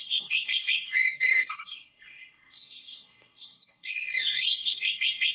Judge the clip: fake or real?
fake